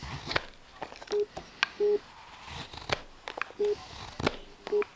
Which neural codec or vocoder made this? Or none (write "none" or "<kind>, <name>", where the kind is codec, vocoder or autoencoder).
none